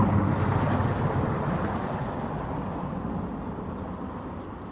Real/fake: real